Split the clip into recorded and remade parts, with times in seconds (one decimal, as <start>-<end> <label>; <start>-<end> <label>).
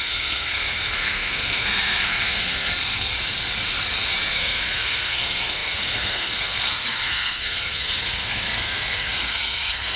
0.0-3.1 remade; 3.1-4.3 recorded; 4.3-10.0 remade